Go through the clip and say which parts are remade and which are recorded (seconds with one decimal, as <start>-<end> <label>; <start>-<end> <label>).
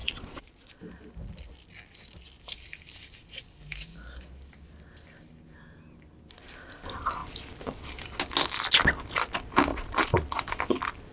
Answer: 0.0-0.7 remade; 0.7-9.7 recorded; 9.7-10.6 remade; 10.6-11.1 recorded